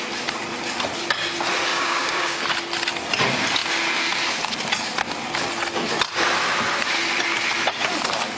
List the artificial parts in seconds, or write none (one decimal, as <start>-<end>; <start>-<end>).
1.7-2.4